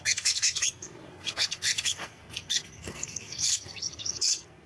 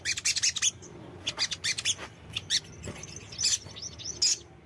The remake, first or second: first